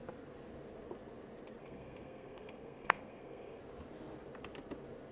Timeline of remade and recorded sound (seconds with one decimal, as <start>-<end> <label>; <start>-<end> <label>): 0.0-1.6 recorded; 1.6-3.6 remade; 3.6-5.1 recorded